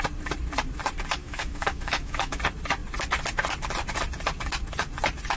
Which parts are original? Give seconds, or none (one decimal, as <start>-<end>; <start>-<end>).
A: 0.0-1.2; 2.4-5.4